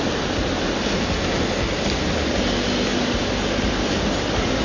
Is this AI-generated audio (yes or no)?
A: no